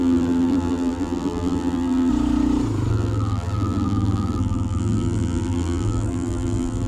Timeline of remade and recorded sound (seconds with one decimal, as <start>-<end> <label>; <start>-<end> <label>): 0.0-2.1 remade; 2.1-2.9 recorded; 2.9-6.9 remade